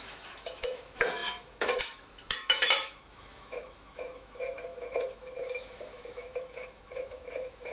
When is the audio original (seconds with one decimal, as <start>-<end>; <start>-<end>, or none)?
none